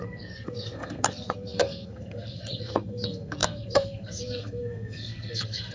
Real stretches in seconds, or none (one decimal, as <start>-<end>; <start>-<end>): none